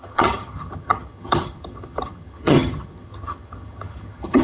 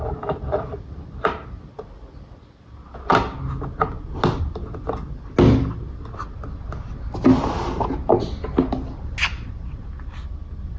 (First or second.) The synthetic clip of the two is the first